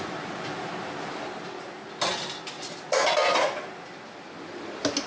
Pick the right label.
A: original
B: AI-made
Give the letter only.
A